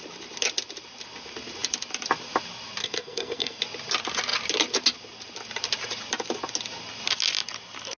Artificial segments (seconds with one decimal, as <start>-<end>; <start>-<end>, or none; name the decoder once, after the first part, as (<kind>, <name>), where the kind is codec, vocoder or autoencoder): 2.8-3.6 (codec, SNAC)